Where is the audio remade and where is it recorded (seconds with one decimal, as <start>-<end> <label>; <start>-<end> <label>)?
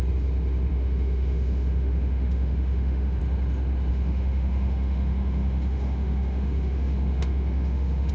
0.0-0.7 recorded; 0.7-3.2 remade; 3.2-3.9 recorded; 3.9-8.1 remade